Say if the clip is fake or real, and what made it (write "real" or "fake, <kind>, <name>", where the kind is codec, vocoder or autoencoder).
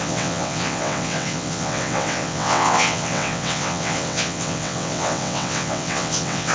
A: fake, vocoder, WaveNeXt